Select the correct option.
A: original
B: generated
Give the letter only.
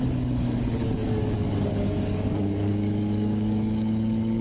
B